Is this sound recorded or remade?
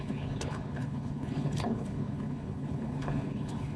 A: remade